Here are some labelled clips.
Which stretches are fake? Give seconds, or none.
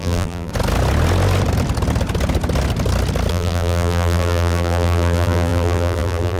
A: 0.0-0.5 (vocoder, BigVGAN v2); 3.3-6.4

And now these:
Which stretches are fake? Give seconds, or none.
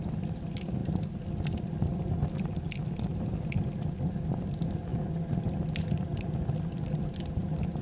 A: none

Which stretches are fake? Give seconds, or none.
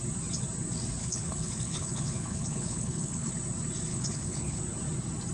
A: 1.0-3.3 (codec, HILCodec); 3.9-4.6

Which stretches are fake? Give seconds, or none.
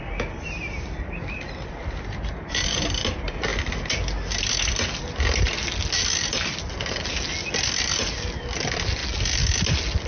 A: none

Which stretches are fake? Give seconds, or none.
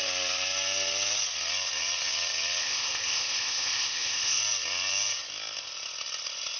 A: 2.6-4.4 (codec, ZipCodec)